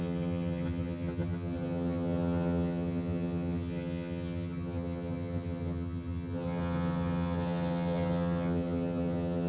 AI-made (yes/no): yes